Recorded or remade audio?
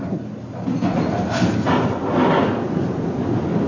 recorded